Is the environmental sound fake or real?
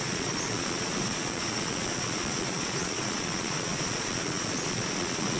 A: fake